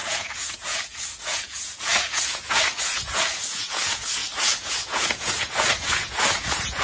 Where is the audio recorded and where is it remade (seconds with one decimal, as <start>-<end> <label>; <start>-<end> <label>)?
0.0-6.8 remade